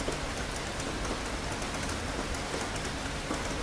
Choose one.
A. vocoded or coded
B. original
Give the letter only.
B